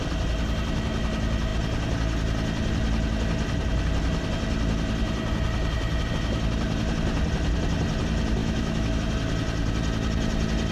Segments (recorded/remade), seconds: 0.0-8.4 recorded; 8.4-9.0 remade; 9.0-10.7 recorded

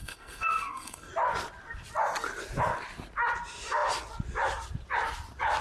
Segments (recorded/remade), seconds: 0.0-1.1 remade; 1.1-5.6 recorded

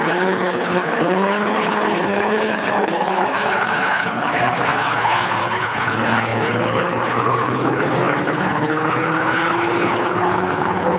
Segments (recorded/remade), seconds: 0.0-11.0 remade

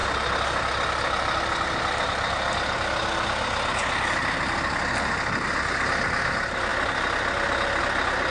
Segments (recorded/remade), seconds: 0.0-8.3 recorded

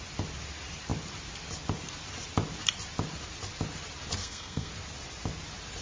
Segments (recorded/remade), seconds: 0.0-4.2 recorded; 4.2-4.7 remade; 4.7-5.8 recorded

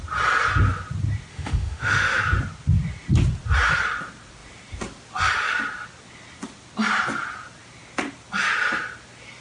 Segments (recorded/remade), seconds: 0.0-1.3 recorded; 1.3-2.2 remade; 2.2-9.4 recorded